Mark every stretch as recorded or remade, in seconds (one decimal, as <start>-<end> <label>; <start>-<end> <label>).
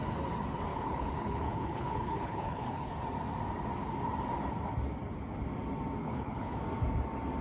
0.0-0.7 recorded; 0.7-2.9 remade; 2.9-6.0 recorded; 6.0-6.6 remade; 6.6-7.4 recorded